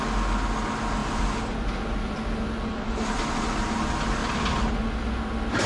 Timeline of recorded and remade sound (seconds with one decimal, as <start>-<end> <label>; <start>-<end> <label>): 0.0-1.0 recorded; 1.0-1.7 remade; 1.7-4.2 recorded; 4.2-4.7 remade; 4.7-5.7 recorded